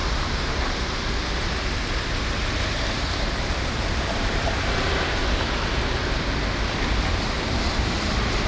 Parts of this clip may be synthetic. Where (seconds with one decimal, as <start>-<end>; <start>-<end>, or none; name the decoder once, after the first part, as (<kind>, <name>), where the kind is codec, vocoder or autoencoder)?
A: 2.3-5.2 (vocoder, BigVGAN v2); 7.0-8.5